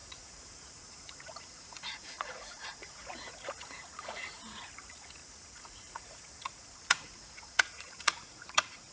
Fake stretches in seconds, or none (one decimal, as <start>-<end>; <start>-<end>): 0.0-8.9